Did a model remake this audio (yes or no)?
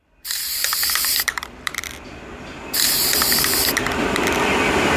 no